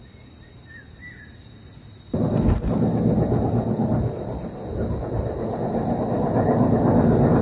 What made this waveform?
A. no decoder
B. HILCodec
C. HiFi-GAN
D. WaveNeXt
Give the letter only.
A